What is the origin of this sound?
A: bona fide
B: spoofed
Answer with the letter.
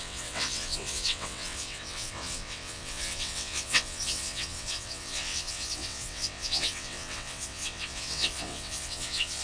B